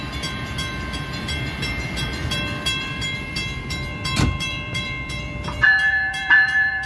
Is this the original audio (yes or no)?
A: no